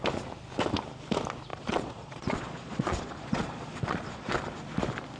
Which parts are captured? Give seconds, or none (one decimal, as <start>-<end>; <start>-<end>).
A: 0.0-1.5; 4.3-5.2